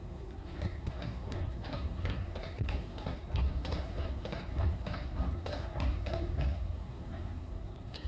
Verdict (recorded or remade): remade